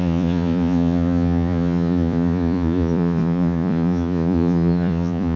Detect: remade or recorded remade